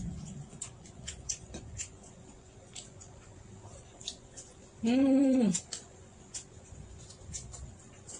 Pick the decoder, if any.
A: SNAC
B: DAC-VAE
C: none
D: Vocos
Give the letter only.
D